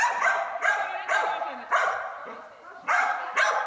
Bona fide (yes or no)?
yes